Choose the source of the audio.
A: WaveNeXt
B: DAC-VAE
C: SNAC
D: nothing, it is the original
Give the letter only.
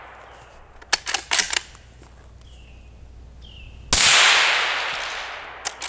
D